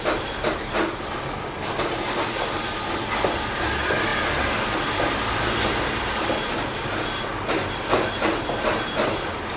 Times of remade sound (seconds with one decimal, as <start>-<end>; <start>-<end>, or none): none

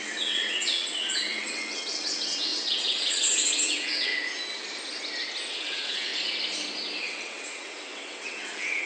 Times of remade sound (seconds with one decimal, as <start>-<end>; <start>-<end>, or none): 0.0-4.1; 5.5-6.1; 7.0-8.9

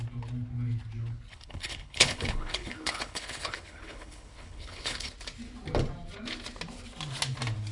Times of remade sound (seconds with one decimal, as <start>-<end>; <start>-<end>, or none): 1.3-5.1

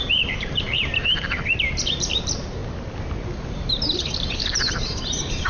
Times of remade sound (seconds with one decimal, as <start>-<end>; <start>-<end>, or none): 0.0-2.6; 3.2-5.5

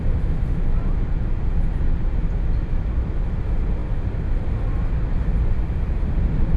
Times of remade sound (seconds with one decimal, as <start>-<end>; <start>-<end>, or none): none

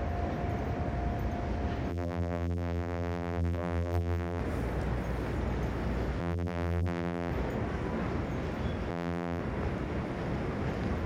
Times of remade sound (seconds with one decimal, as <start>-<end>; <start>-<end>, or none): 1.9-4.4; 6.2-7.3; 8.9-9.4

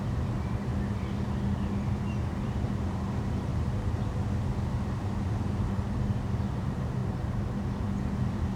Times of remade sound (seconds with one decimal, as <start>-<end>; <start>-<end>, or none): 0.0-0.7; 1.7-7.0; 8.0-8.6